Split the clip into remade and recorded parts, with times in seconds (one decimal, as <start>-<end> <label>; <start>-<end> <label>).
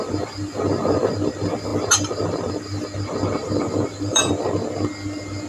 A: 0.0-3.4 recorded; 3.4-4.3 remade; 4.3-5.5 recorded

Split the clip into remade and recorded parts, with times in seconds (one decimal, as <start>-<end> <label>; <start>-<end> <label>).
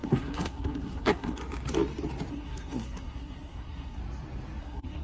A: 0.0-1.4 remade; 1.4-2.3 recorded; 2.3-4.0 remade; 4.0-4.6 recorded; 4.6-5.0 remade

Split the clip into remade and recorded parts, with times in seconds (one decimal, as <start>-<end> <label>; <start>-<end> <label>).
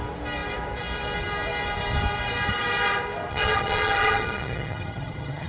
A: 0.0-3.3 recorded; 3.3-5.5 remade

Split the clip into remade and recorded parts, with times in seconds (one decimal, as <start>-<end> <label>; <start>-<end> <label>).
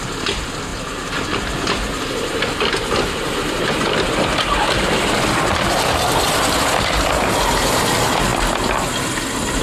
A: 0.0-9.6 recorded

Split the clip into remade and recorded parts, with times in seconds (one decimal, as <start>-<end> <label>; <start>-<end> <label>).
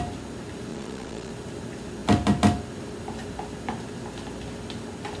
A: 0.0-0.7 recorded; 0.7-1.3 remade; 1.3-5.2 recorded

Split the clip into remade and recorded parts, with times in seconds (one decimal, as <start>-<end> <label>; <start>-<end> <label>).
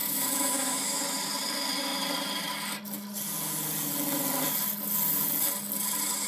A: 0.0-1.0 remade; 1.0-6.3 recorded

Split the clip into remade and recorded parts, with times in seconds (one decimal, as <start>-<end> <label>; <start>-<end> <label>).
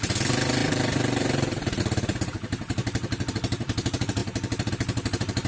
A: 0.0-2.8 remade; 2.8-3.3 recorded; 3.3-5.5 remade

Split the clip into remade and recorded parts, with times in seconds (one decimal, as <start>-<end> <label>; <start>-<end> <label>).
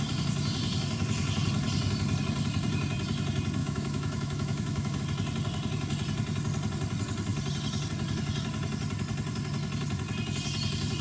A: 0.0-3.6 recorded; 3.6-5.0 remade; 5.0-11.0 recorded